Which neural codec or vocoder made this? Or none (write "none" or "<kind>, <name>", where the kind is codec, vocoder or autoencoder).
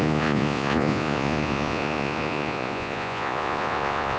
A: vocoder, Vocos